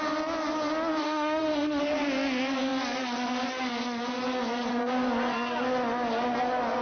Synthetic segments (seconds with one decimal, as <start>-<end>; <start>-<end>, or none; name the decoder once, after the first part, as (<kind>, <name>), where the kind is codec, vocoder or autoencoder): 1.0-1.8 (autoencoder, DAC-VAE)